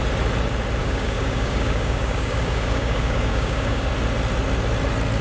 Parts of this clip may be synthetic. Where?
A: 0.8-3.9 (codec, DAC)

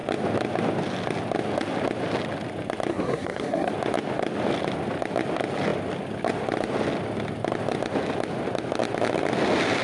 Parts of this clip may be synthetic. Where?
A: 2.9-3.7 (codec, SNAC)

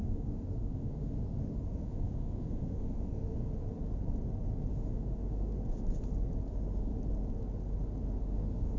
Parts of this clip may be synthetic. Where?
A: 0.0-3.4 (autoencoder, DAC-VAE); 4.7-5.5; 6.5-6.9; 8.2-8.8

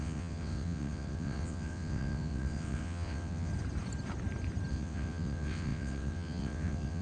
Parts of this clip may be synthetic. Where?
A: 0.0-3.5 (vocoder, WaveNeXt); 4.7-7.0

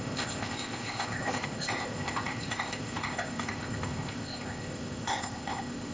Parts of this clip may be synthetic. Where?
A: 0.0-5.9 (codec, ZipCodec)

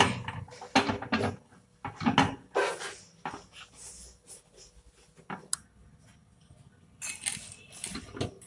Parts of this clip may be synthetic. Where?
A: none

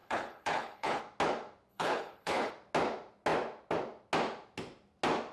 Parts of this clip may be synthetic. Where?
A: 0.0-1.0 (codec, HILCodec); 1.7-2.5

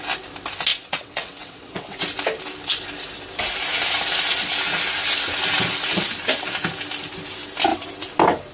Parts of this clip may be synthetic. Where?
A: 0.7-2.0 (vocoder, WaveNeXt)